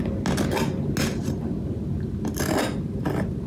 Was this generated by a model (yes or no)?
no